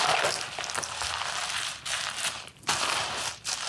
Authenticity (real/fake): fake